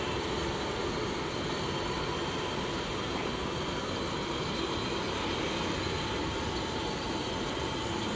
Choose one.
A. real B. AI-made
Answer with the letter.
A